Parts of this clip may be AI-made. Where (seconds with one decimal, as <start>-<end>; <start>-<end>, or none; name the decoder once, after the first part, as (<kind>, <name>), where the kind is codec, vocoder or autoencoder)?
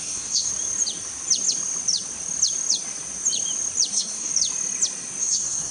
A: 0.0-0.5 (codec, SNAC); 3.9-4.3; 5.2-5.7